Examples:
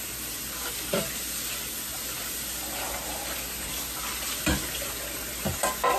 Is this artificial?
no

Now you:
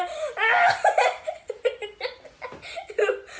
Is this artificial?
no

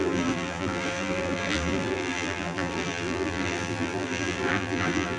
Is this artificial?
yes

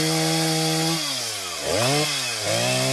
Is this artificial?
no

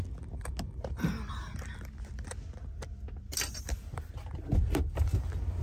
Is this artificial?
no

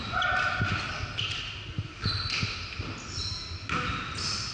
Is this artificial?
no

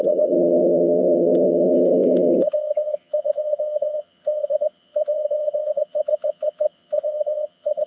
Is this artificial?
yes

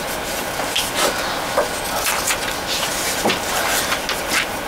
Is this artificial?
no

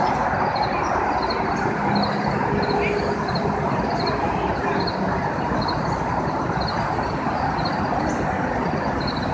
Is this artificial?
no